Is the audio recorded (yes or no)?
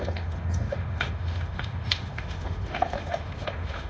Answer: no